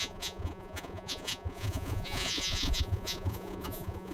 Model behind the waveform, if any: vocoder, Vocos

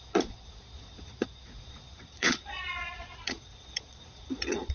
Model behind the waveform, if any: vocoder, Vocos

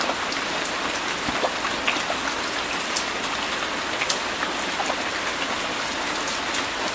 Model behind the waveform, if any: none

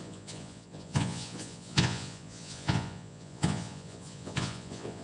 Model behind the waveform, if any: vocoder, Vocos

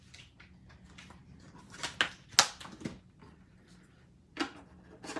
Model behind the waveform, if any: none